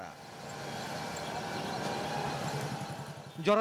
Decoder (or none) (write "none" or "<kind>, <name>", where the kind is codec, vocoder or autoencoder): none